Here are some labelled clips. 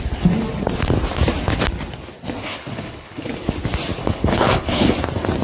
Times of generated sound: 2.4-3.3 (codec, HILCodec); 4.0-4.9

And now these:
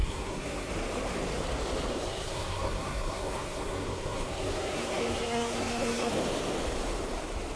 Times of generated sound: 0.0-0.7 (codec, SNAC); 1.9-6.1

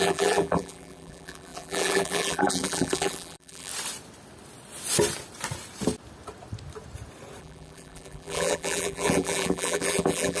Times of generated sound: 0.0-3.7 (vocoder, BigVGAN v2); 7.4-10.4

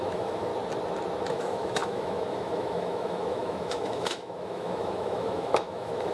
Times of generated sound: 0.0-0.5 (autoencoder, DAC-VAE); 1.3-6.1

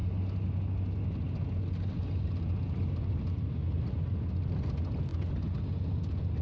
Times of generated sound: none

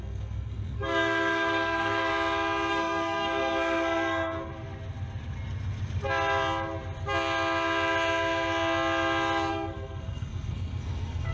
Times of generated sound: 0.0-2.1 (codec, SNAC); 2.7-4.5; 9.5-11.3